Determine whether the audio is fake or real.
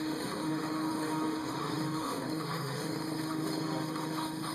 fake